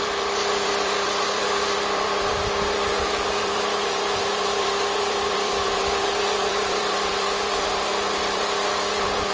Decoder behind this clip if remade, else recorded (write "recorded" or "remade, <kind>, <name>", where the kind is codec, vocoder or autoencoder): remade, vocoder, BigVGAN v2